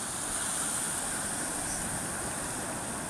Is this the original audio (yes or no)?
yes